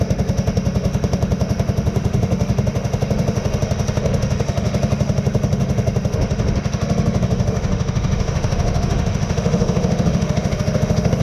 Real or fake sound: fake